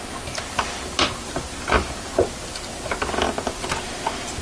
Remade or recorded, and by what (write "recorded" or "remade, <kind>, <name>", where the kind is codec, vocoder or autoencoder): recorded